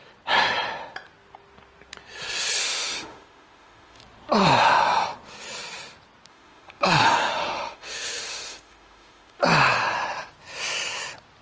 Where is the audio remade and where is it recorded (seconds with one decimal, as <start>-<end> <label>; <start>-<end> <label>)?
0.0-2.6 recorded; 2.6-4.0 remade; 4.0-6.3 recorded; 6.3-9.4 remade; 9.4-11.4 recorded